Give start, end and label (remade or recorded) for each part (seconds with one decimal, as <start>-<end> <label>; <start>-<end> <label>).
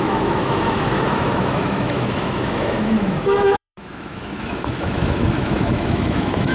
0.0-6.5 remade